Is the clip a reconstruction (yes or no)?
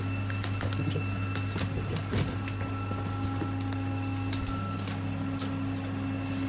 no